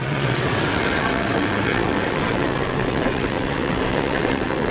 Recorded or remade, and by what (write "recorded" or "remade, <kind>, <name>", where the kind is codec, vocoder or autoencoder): remade, vocoder, WaveNeXt